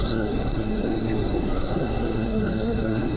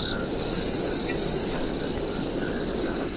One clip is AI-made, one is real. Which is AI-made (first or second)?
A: first